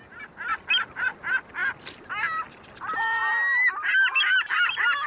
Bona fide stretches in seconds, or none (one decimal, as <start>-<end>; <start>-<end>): 0.0-5.1